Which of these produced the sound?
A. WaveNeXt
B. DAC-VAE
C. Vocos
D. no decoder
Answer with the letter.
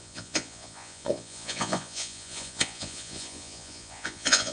C